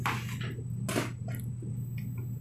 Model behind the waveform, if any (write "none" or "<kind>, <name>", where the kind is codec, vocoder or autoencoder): none